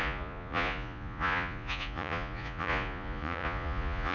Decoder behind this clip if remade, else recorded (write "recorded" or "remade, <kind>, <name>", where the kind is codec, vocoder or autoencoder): remade, vocoder, Vocos